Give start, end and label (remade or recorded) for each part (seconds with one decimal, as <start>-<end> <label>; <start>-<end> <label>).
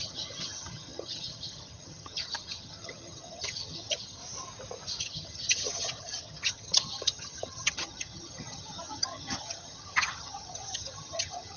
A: 0.0-4.2 remade; 4.2-5.0 recorded; 5.0-11.6 remade